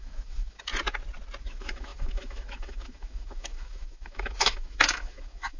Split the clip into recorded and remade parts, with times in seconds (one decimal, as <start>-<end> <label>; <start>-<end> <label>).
0.0-0.7 remade; 0.7-1.4 recorded; 1.4-5.6 remade